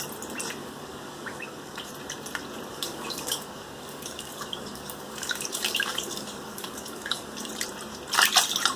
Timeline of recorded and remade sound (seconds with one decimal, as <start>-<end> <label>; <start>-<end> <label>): 0.0-0.6 recorded; 0.6-1.9 remade; 1.9-2.7 recorded; 2.7-7.5 remade; 7.5-8.8 recorded